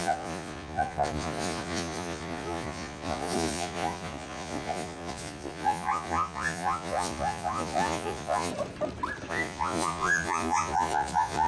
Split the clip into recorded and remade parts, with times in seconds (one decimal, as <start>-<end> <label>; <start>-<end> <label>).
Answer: 0.0-8.5 remade; 8.5-9.3 recorded; 9.3-11.5 remade